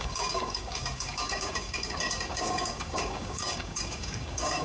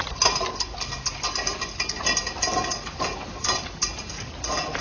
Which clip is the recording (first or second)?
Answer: second